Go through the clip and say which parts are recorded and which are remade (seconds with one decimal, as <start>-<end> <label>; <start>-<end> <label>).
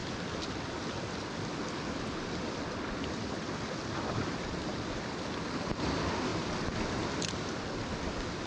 0.0-8.5 recorded